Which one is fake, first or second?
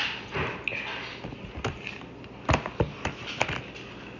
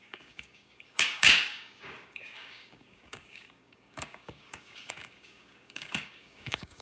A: second